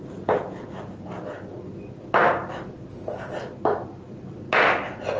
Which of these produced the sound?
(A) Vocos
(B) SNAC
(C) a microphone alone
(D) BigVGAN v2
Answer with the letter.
C